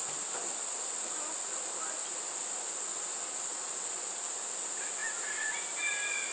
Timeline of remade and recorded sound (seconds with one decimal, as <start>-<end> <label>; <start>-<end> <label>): 0.0-6.3 recorded